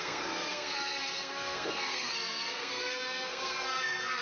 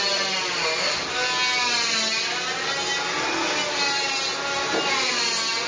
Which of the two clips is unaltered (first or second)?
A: second